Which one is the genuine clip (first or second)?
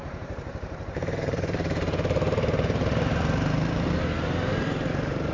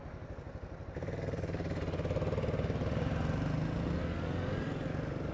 second